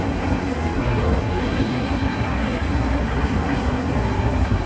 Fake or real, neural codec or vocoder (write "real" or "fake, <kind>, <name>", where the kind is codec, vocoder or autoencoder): fake, codec, SNAC